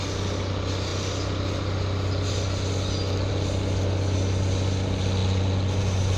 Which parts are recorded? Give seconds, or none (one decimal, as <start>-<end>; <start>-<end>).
0.0-6.2